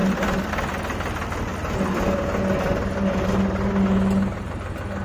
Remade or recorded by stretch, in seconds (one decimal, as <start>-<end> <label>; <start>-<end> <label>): 0.0-5.0 recorded